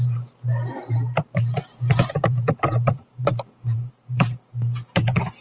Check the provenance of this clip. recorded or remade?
remade